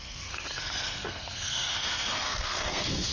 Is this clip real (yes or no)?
no